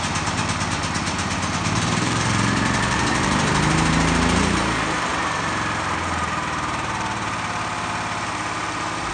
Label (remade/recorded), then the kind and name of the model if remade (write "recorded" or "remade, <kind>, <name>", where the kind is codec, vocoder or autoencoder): remade, vocoder, BigVGAN v2